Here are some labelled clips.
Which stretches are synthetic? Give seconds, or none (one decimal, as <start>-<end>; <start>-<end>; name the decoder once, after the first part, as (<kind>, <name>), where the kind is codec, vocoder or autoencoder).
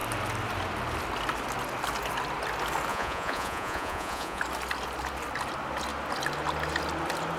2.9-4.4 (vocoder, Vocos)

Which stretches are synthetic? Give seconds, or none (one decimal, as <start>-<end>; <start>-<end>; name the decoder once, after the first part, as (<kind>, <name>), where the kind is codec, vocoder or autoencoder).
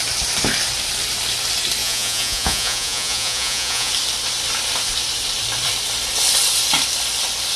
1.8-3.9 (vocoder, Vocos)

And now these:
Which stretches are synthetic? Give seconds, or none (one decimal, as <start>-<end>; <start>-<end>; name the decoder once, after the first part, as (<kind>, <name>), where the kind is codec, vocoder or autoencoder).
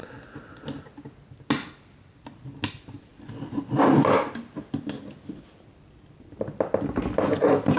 none